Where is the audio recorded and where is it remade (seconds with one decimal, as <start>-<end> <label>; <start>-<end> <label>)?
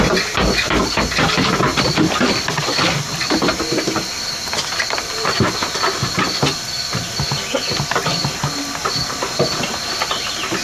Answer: 0.0-1.7 recorded; 1.7-3.6 remade; 3.6-10.6 recorded